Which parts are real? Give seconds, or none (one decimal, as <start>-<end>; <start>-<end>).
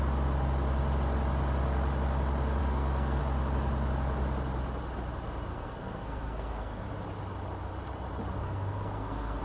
0.0-2.6; 3.2-5.5; 6.8-8.4